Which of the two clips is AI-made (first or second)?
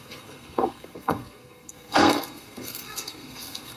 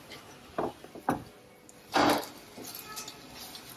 first